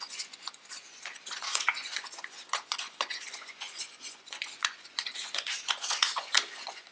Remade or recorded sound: remade